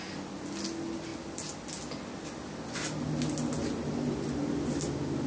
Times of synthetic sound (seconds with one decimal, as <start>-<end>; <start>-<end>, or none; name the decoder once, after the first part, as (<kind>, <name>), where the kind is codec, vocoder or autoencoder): none